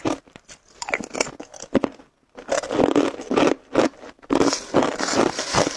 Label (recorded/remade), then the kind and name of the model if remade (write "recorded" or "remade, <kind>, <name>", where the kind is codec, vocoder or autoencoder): recorded